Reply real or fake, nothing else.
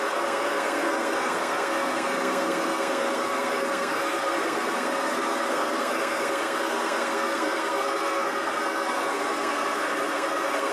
fake